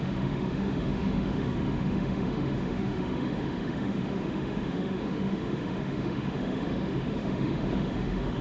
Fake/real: fake